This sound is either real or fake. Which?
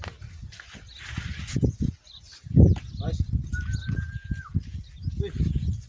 real